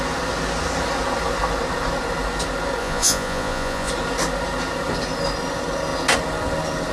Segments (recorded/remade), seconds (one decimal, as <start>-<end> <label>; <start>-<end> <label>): 0.0-2.8 recorded; 2.8-3.9 remade; 3.9-6.9 recorded